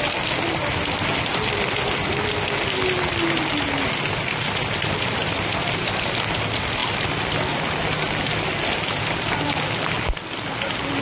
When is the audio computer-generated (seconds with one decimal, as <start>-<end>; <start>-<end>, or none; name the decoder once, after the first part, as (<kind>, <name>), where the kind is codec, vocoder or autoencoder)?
none